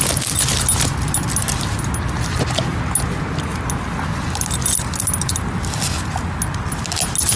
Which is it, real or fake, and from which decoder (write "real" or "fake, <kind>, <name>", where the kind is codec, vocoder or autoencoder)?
real